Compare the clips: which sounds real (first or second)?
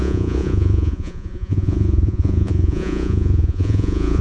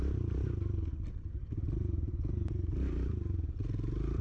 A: second